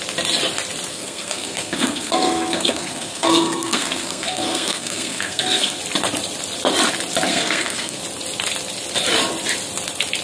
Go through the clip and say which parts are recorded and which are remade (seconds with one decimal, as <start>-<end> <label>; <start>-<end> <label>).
0.0-0.9 recorded; 0.9-5.8 remade; 5.8-7.3 recorded; 7.3-8.0 remade; 8.0-10.2 recorded